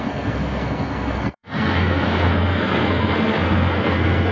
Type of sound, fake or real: fake